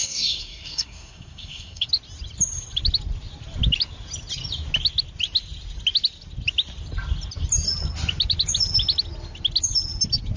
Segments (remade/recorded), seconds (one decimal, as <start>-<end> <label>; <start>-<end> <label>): 0.0-1.9 remade; 1.9-10.4 recorded